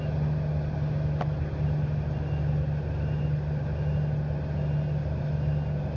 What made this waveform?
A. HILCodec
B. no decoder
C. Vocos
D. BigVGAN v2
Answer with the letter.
B